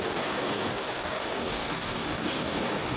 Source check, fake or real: fake